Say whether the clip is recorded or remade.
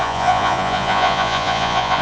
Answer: remade